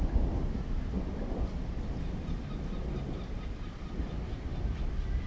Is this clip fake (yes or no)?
no